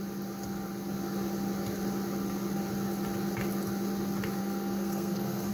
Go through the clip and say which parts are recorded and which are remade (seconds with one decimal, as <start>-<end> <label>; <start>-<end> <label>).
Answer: 0.0-4.4 recorded; 4.4-5.5 remade